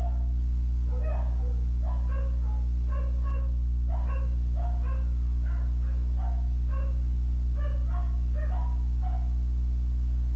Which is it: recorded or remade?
recorded